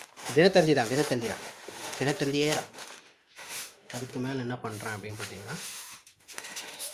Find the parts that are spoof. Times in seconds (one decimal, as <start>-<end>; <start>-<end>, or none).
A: 0.0-4.1; 5.1-6.9